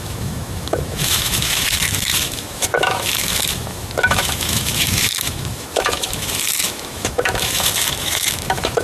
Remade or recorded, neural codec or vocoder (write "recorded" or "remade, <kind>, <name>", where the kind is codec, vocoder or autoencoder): remade, autoencoder, DAC-VAE